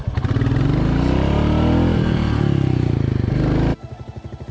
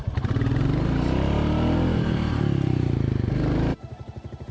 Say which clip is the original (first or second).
first